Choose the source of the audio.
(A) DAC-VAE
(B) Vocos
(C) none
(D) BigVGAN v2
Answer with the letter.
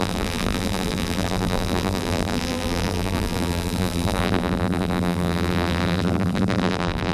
D